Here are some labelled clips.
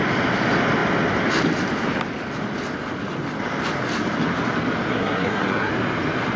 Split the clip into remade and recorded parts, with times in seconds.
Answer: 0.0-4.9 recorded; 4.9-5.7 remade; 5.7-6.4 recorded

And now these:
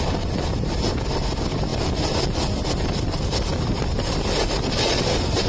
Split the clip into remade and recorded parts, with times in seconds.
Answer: 0.0-1.7 recorded; 1.7-5.0 remade; 5.0-5.5 recorded

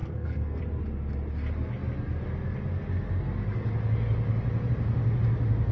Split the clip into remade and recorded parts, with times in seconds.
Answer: 0.0-0.6 remade; 0.6-5.7 recorded

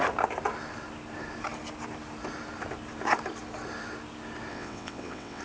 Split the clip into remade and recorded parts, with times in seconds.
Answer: 0.0-4.5 recorded; 4.5-5.4 remade